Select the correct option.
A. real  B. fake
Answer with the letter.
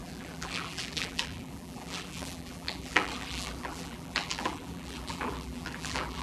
B